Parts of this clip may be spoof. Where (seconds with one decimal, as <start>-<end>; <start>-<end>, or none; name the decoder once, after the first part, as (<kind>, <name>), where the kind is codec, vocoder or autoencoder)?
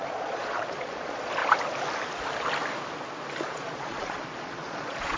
0.0-1.4 (vocoder, Vocos); 3.5-5.2